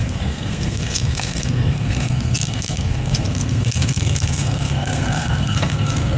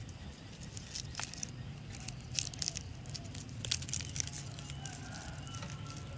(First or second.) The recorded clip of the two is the second